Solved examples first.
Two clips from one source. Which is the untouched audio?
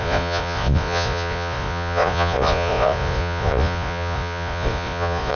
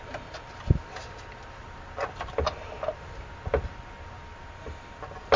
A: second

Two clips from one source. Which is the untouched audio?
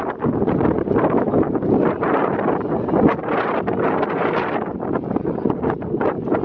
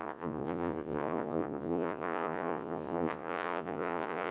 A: first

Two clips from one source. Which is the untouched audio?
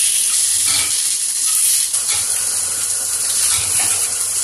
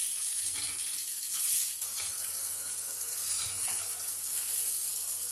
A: first